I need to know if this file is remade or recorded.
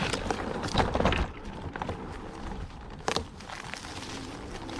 remade